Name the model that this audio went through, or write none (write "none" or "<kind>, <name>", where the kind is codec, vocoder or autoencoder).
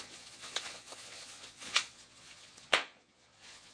vocoder, Vocos